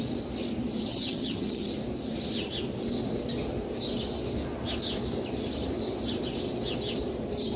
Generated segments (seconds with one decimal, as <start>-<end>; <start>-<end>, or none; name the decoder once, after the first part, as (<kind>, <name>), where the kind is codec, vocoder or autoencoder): 0.9-1.7 (vocoder, HiFi-GAN)